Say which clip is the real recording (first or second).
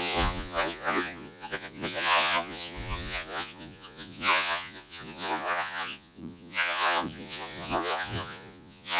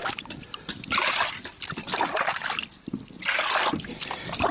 second